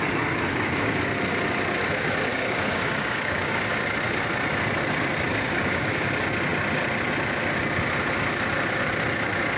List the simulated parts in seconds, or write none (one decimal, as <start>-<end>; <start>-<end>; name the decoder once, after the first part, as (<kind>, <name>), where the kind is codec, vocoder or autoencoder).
0.5-1.0 (codec, DAC); 2.3-3.7; 5.3-6.1